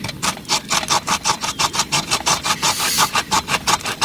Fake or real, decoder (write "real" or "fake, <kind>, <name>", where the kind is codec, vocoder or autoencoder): real